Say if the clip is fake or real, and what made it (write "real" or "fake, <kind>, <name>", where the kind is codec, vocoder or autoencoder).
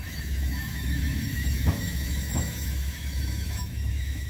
fake, autoencoder, DAC-VAE